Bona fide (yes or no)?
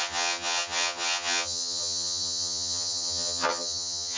no